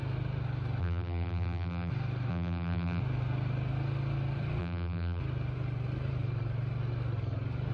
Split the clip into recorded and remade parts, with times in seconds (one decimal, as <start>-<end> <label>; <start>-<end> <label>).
0.0-0.8 recorded; 0.8-1.9 remade; 1.9-2.3 recorded; 2.3-3.0 remade; 3.0-4.6 recorded; 4.6-5.2 remade; 5.2-7.7 recorded